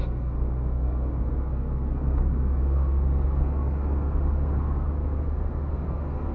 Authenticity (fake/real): fake